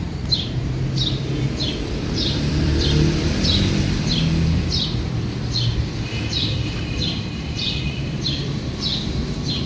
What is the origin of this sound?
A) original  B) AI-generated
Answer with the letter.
B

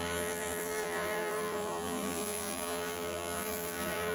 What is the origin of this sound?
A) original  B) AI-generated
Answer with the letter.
B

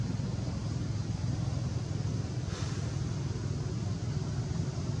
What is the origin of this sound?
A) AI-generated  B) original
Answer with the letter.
B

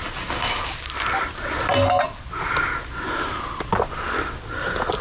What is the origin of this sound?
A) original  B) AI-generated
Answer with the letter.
A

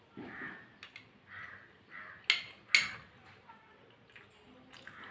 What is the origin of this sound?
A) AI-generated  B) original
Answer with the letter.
B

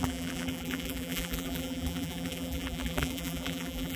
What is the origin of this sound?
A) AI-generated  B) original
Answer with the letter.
A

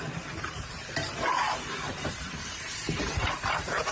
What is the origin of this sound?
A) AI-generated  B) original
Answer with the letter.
A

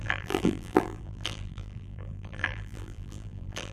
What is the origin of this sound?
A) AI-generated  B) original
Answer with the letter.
A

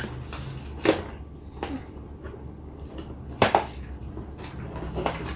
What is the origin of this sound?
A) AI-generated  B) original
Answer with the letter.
B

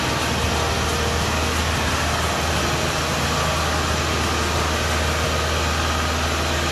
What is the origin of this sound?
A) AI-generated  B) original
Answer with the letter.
B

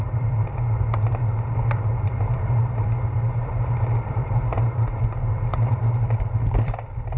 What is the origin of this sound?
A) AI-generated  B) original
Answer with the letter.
A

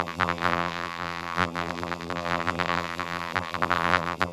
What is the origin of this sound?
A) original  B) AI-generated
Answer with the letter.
B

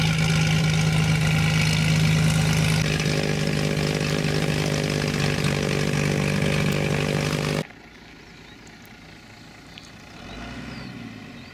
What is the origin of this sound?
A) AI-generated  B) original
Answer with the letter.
B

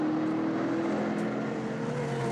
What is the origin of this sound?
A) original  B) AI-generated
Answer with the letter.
A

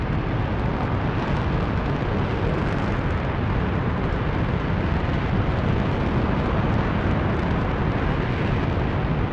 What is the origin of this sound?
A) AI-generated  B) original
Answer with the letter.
B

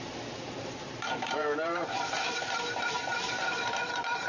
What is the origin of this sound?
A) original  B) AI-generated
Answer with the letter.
B